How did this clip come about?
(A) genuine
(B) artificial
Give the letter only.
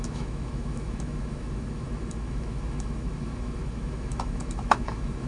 B